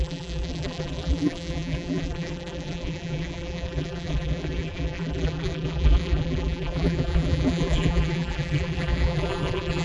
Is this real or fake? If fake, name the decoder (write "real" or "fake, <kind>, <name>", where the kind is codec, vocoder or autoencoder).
fake, vocoder, BigVGAN v2